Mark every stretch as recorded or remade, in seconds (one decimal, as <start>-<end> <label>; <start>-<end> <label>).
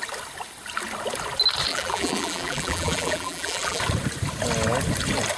0.0-1.7 recorded; 1.7-3.8 remade; 3.8-5.4 recorded